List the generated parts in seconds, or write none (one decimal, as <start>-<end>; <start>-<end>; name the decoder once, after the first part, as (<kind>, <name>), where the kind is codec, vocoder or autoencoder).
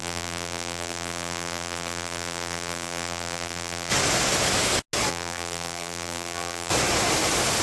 0.0-3.9 (vocoder, BigVGAN v2); 5.1-6.7